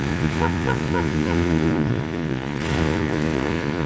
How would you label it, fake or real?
fake